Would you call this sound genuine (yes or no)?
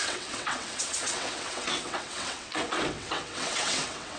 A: no